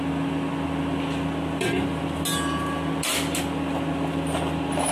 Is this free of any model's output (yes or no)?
yes